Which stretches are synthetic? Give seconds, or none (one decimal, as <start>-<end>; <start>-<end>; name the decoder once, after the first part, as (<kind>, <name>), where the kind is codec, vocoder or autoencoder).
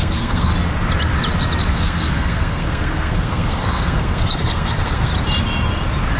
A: 0.0-0.5 (codec, SNAC); 1.7-5.1